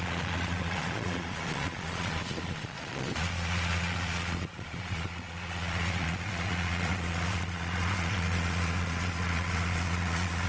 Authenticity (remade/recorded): remade